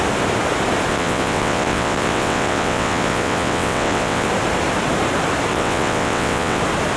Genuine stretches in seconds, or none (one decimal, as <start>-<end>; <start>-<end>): 0.0-0.9; 4.3-5.5; 6.6-7.0